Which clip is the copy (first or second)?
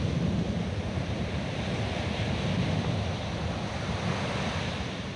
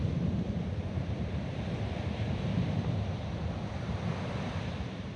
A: second